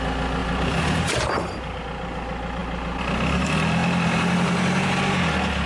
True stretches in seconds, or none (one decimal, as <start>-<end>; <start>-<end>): 0.0-0.4; 1.8-3.8; 5.0-5.7